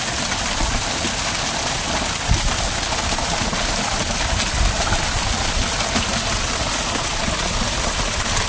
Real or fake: real